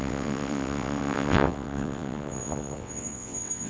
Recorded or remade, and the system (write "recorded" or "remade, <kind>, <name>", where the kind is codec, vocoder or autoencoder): remade, vocoder, WaveNeXt